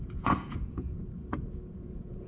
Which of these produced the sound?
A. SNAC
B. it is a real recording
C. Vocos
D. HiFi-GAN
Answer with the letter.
C